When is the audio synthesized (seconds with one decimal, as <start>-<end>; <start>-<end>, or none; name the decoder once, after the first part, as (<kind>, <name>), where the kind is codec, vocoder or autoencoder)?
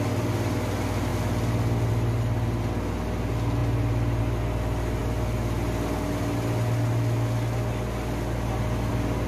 none